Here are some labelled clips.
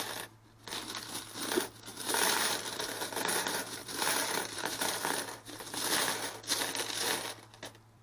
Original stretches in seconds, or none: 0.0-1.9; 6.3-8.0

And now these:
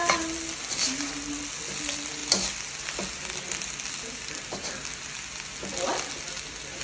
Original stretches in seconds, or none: 0.0-6.8

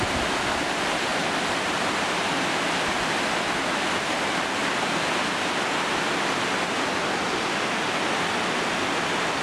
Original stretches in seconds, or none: 0.0-1.1; 1.7-4.6; 5.3-9.4

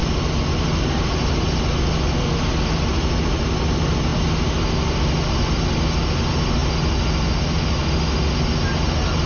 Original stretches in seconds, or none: 0.0-9.3

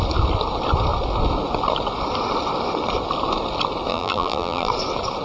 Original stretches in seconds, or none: 0.0-3.9; 4.7-5.2

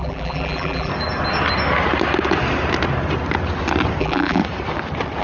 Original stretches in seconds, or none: 0.9-4.0; 4.4-5.2